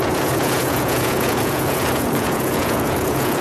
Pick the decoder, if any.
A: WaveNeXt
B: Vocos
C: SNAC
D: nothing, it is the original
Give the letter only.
B